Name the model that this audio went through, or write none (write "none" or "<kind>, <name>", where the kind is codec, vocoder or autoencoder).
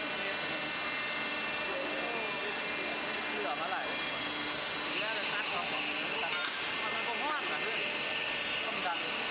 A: none